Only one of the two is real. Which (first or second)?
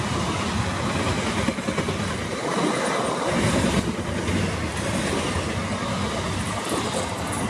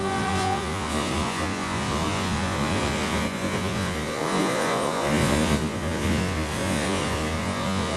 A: first